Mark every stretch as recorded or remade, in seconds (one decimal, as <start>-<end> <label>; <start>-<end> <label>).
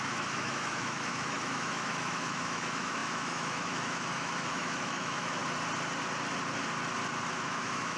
0.0-5.4 remade; 5.4-7.3 recorded; 7.3-8.0 remade